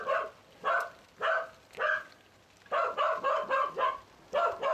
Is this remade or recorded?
recorded